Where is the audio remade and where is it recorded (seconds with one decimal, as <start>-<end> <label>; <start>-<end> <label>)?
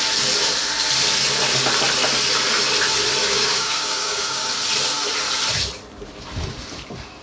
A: 0.0-3.2 recorded; 3.2-4.5 remade; 4.5-7.2 recorded